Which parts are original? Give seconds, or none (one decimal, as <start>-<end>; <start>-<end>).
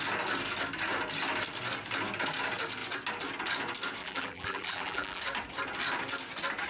0.0-4.0; 5.2-6.7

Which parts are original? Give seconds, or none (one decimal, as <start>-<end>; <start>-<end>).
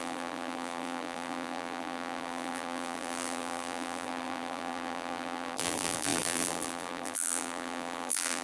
none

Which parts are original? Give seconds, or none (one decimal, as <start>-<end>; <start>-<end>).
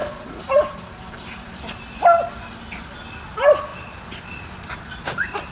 2.0-5.5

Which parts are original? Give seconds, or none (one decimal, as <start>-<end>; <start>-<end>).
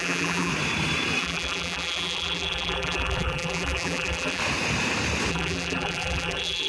0.5-1.2; 4.4-5.3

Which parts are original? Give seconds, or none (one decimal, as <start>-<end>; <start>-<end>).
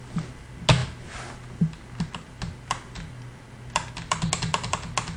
0.0-5.2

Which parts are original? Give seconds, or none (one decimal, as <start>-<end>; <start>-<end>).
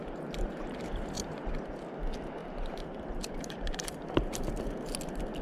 1.8-2.4; 4.6-5.4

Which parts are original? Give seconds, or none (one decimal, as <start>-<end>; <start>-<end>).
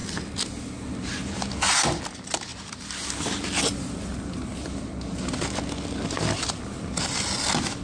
0.0-7.8